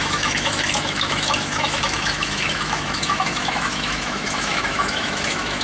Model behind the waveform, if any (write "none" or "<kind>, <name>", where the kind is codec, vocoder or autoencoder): autoencoder, DAC-VAE